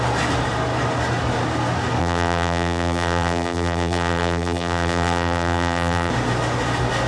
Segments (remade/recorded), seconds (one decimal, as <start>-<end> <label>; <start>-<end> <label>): 0.0-2.0 recorded; 2.0-6.1 remade; 6.1-7.1 recorded

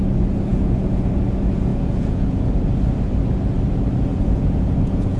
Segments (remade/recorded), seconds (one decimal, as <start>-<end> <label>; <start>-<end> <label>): 0.0-0.5 recorded; 0.5-1.1 remade; 1.1-1.7 recorded; 1.7-2.4 remade; 2.4-4.1 recorded; 4.1-5.2 remade

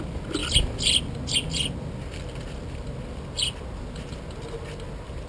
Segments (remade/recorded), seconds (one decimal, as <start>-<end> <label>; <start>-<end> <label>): 0.0-5.3 recorded

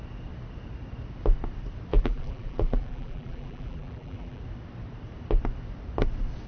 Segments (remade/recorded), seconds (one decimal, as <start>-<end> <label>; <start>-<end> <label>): 0.0-1.9 recorded; 1.9-4.4 remade; 4.4-6.5 recorded